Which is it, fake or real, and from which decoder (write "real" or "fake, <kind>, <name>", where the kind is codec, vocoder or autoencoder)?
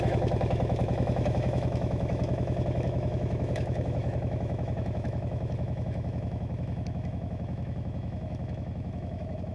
fake, autoencoder, DAC-VAE